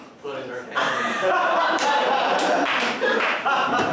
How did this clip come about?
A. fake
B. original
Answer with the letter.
A